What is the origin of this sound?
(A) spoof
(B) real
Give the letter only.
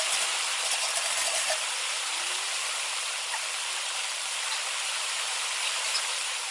A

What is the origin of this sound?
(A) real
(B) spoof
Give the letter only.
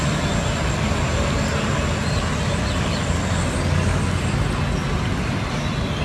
A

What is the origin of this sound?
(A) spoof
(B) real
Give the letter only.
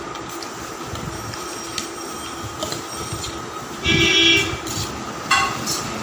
B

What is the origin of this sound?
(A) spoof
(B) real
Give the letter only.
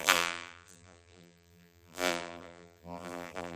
A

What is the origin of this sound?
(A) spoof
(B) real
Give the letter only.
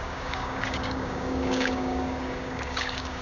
A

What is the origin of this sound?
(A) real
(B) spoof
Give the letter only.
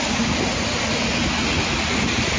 A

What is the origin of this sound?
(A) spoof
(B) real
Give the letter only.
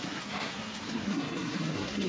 A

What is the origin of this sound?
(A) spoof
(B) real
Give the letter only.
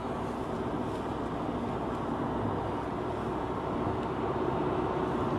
B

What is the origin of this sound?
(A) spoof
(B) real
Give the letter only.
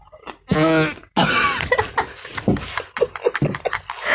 B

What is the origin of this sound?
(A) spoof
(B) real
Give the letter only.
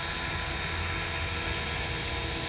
B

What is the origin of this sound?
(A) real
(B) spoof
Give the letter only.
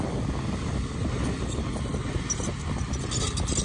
A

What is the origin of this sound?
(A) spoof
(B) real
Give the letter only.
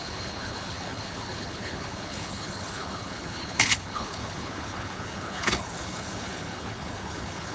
A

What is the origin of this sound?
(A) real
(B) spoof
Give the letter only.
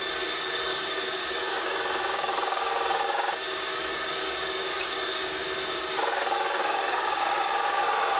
B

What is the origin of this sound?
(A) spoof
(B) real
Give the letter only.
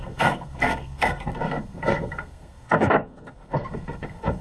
A